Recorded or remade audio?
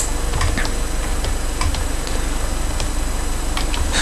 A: recorded